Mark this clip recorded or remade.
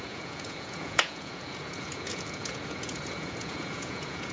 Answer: remade